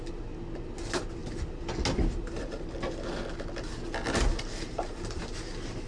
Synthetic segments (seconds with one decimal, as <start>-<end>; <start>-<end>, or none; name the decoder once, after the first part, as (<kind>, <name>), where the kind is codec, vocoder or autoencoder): none